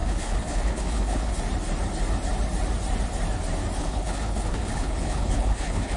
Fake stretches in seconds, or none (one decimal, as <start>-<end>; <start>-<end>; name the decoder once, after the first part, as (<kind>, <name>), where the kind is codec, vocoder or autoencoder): 0.0-1.3 (codec, HILCodec); 3.8-6.0